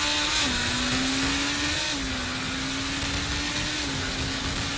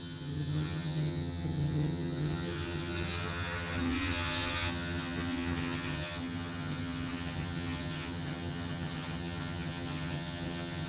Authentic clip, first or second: first